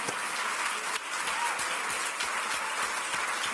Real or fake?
real